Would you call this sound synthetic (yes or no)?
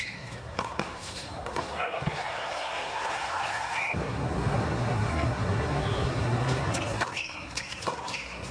yes